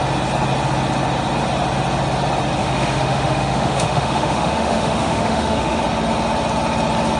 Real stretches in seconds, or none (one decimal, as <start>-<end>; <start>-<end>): 0.0-2.6; 5.8-7.2